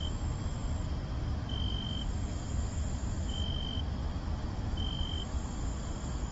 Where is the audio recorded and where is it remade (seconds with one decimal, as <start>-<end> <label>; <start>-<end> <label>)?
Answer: 0.0-4.0 recorded; 4.0-4.8 remade; 4.8-6.3 recorded